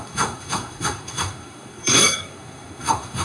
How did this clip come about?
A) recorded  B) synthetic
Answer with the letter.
B